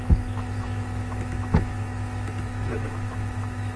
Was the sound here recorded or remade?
remade